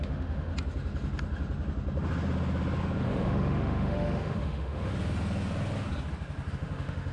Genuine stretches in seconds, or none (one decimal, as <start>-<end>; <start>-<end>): 0.5-3.0; 4.9-6.5